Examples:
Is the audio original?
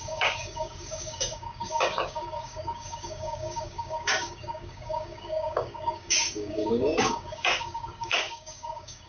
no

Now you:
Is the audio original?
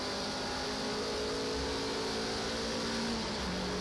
yes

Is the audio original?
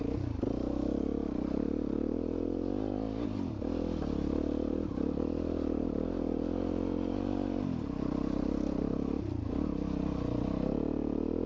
yes